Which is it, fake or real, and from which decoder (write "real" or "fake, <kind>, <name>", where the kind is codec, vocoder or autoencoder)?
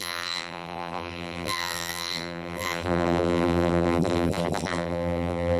fake, vocoder, BigVGAN v2